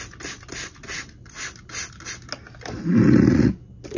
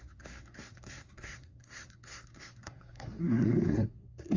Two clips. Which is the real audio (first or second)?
first